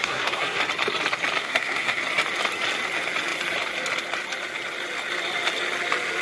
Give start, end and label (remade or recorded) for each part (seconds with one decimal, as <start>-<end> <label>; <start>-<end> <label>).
0.0-0.6 remade; 0.6-1.4 recorded; 1.4-2.0 remade; 2.0-6.2 recorded